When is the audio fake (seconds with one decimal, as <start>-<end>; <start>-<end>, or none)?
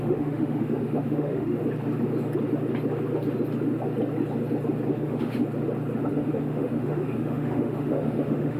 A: 0.0-1.6; 4.9-5.4; 6.1-8.6